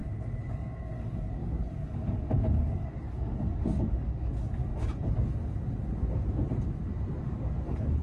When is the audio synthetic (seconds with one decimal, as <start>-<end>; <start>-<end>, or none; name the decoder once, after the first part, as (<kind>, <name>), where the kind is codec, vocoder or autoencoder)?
0.5-4.7 (codec, DAC); 7.2-8.0